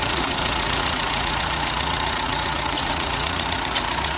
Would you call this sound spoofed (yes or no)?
yes